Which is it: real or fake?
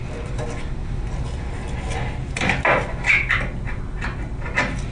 real